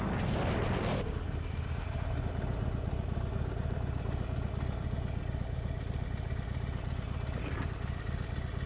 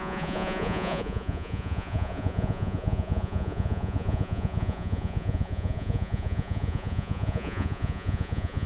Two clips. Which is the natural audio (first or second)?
first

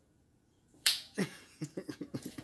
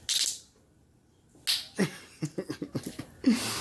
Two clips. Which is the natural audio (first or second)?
second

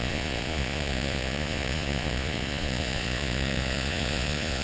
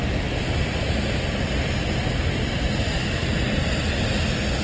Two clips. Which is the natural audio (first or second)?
second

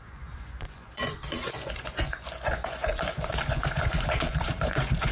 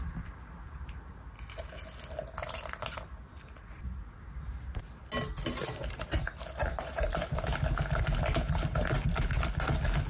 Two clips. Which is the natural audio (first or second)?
second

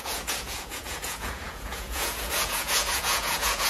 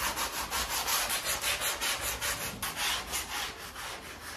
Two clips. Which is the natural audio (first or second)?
second